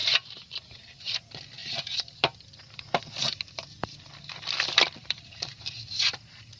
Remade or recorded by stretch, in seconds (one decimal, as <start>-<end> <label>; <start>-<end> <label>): 0.0-1.0 recorded; 1.0-6.6 remade